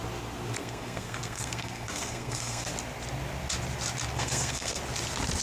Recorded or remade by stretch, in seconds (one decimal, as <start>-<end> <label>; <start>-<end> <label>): 0.0-0.6 recorded; 0.6-2.7 remade; 2.7-4.1 recorded; 4.1-4.8 remade; 4.8-5.4 recorded